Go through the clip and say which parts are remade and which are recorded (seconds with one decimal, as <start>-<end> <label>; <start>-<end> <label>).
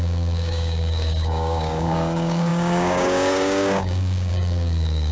0.0-5.1 remade